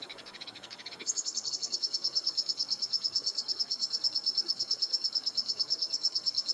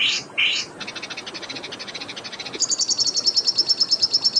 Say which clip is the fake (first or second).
first